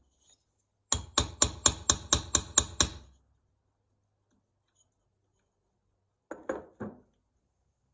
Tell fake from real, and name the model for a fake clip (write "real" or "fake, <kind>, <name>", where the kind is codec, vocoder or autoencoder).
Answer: real